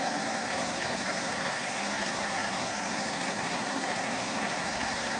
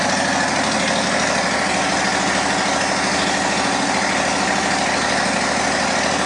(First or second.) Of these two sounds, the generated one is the first